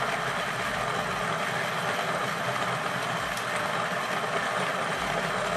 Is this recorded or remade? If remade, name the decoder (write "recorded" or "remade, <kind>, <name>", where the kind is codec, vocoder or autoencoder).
recorded